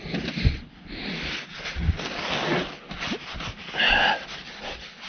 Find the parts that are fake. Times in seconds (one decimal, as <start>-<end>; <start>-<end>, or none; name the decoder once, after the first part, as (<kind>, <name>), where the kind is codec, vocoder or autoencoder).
none